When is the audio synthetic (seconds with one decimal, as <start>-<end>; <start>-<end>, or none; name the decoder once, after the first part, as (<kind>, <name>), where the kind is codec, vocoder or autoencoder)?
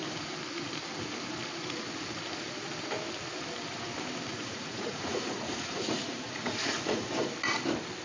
4.3-7.3 (vocoder, Vocos)